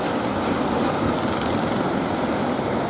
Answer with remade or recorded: recorded